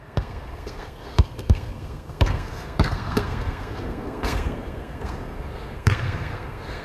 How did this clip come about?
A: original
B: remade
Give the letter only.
B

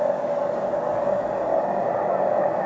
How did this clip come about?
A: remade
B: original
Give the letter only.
B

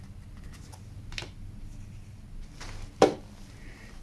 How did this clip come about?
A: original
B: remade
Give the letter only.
A